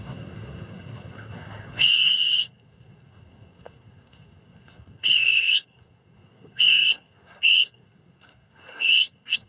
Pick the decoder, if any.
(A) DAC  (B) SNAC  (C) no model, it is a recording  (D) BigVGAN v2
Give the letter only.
B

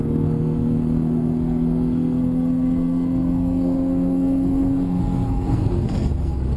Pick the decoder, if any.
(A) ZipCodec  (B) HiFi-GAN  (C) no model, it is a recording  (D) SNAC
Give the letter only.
D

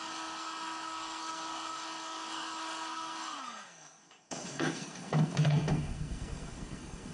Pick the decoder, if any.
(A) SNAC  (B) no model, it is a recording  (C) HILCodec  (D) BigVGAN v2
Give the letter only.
A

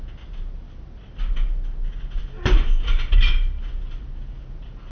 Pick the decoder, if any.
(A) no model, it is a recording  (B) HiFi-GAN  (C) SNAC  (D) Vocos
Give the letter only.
A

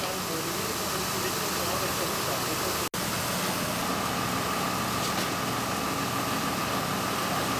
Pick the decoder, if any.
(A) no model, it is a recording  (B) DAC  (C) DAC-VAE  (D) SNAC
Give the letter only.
A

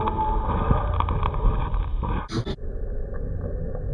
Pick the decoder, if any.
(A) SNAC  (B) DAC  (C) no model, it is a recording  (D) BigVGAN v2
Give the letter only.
C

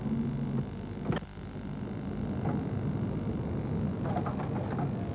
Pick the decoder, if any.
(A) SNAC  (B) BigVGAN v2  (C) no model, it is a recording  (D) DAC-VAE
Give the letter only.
C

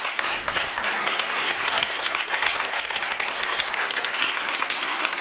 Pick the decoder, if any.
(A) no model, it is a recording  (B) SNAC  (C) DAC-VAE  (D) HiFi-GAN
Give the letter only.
B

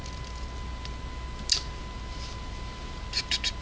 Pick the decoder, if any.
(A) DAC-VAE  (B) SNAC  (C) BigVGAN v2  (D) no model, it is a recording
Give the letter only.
D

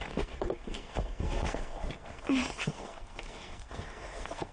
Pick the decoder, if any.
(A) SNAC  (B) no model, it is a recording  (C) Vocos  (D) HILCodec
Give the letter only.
A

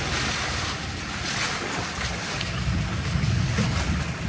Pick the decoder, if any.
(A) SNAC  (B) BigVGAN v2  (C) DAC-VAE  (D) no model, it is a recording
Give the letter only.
D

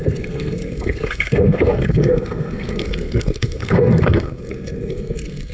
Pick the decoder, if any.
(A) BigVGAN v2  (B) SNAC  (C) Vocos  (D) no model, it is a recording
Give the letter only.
B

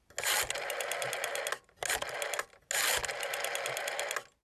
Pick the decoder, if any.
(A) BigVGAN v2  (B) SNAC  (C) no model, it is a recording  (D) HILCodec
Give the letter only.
C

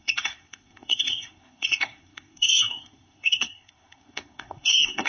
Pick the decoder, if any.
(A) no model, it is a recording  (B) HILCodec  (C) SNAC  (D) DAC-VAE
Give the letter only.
C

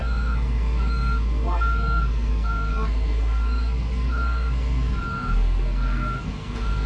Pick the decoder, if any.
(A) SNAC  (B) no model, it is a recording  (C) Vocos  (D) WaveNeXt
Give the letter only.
A